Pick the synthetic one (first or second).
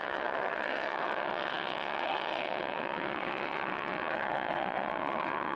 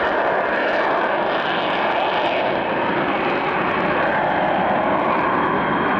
first